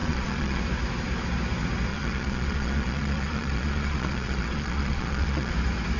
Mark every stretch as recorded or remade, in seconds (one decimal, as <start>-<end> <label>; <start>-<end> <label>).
0.0-0.6 remade; 0.6-1.9 recorded; 1.9-5.5 remade; 5.5-6.0 recorded